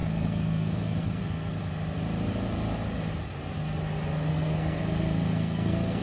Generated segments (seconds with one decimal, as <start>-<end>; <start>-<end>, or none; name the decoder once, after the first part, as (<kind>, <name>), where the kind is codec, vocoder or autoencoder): 0.0-1.6 (codec, SNAC); 4.3-6.0